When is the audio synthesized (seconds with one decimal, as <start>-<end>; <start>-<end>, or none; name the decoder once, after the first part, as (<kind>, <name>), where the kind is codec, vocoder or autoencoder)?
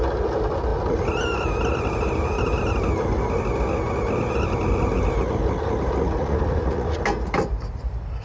6.2-7.0 (vocoder, Vocos)